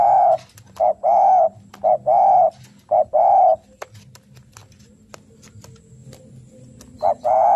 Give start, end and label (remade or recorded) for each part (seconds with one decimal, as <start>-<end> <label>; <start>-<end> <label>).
0.0-7.6 recorded